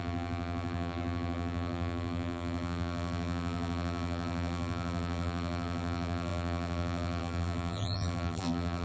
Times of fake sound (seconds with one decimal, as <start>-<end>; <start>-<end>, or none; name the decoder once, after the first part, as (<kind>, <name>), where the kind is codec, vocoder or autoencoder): 0.0-8.8 (vocoder, BigVGAN v2)